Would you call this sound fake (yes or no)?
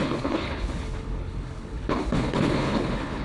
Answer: yes